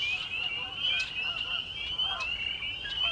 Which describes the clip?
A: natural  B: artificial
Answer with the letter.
A